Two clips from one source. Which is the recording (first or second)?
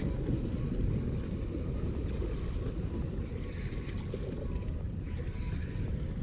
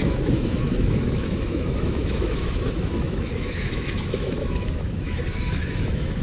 first